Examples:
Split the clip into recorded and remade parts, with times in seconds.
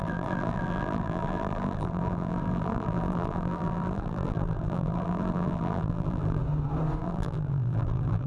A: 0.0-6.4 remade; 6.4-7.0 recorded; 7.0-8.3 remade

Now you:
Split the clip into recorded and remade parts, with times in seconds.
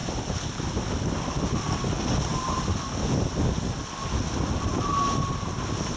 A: 0.0-6.0 recorded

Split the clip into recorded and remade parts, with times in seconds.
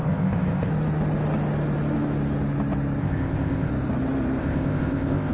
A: 0.0-0.7 remade; 0.7-3.0 recorded; 3.0-3.7 remade; 3.7-4.4 recorded; 4.4-5.3 remade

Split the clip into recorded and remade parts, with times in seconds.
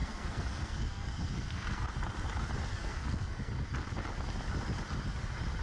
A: 0.0-1.9 remade; 1.9-2.7 recorded; 2.7-3.5 remade; 3.5-5.6 recorded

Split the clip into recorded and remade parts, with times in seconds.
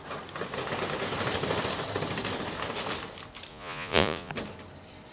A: 0.0-3.5 recorded; 3.5-4.3 remade; 4.3-5.1 recorded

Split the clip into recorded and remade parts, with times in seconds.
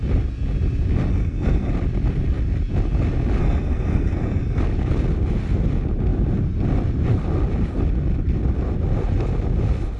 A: 0.0-1.1 recorded; 1.1-1.7 remade; 1.7-3.4 recorded; 3.4-4.6 remade; 4.6-10.0 recorded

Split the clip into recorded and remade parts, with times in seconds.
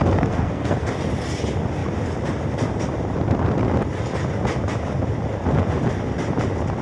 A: 0.0-0.9 remade; 0.9-6.8 recorded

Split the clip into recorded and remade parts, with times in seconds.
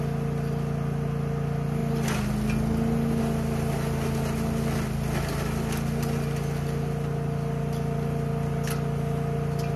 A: 0.0-9.8 recorded